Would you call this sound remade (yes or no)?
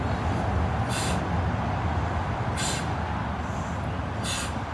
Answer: no